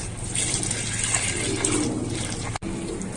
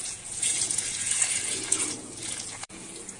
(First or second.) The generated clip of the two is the second